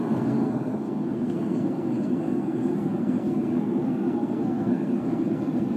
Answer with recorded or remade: remade